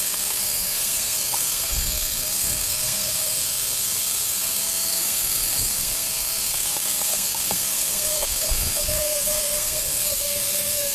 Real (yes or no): no